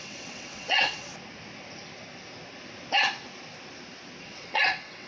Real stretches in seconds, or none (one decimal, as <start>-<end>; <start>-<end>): 1.1-4.2